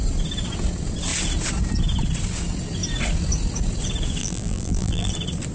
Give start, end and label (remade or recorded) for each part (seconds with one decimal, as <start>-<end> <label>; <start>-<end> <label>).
0.0-4.2 recorded; 4.2-5.1 remade; 5.1-5.5 recorded